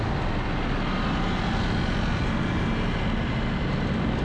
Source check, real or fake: real